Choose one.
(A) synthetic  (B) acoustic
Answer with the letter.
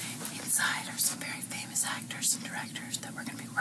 B